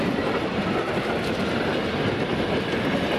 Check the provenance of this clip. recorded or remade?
recorded